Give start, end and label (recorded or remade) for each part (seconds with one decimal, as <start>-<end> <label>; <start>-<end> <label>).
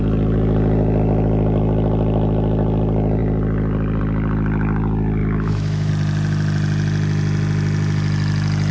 0.0-5.2 recorded; 5.2-5.9 remade; 5.9-8.7 recorded